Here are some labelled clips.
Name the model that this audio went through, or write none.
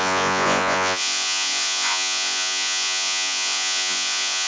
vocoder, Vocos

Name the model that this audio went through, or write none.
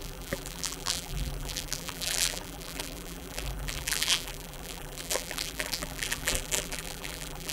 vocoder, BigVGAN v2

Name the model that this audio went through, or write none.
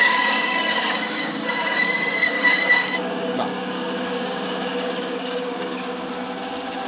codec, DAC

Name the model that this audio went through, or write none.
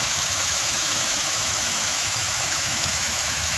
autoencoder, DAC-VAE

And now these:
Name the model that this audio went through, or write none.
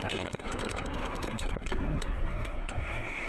codec, SNAC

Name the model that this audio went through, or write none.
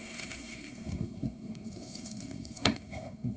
codec, SNAC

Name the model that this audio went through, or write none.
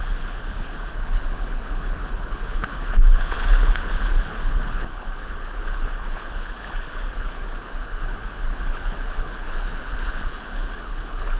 codec, HILCodec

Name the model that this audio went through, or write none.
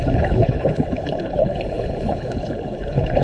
codec, HILCodec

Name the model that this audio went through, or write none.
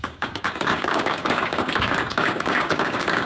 codec, DAC